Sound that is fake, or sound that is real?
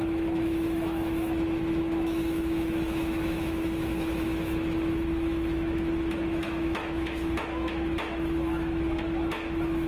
fake